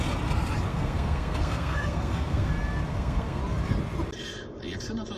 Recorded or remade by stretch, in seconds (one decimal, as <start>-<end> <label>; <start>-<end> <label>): 0.0-0.7 recorded; 0.7-2.5 remade; 2.5-2.9 recorded; 2.9-3.4 remade; 3.4-5.2 recorded